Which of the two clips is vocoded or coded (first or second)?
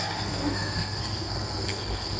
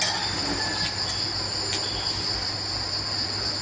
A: first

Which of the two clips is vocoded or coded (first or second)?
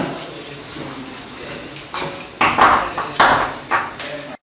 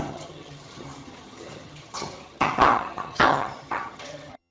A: second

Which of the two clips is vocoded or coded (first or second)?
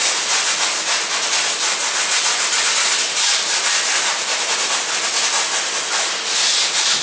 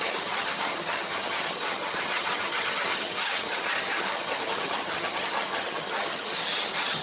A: second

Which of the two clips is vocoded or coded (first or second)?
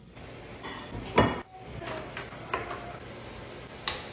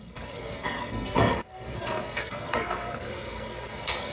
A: second